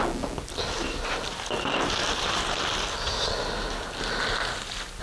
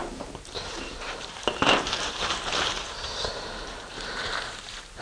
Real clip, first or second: first